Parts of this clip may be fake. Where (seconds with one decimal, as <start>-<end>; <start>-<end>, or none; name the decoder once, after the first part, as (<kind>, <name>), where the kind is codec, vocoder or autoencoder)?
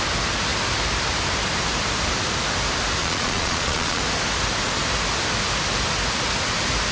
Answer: 3.0-4.0 (vocoder, Vocos)